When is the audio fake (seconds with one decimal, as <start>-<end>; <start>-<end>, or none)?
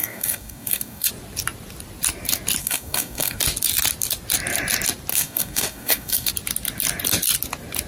0.0-1.1; 2.6-3.4; 5.1-6.3